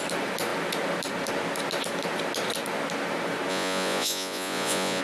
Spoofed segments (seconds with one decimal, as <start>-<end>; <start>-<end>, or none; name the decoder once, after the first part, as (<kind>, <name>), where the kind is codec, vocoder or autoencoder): 3.5-5.0 (vocoder, Vocos)